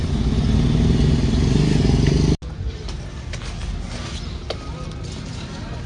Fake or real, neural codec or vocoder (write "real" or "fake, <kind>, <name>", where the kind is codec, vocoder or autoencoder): real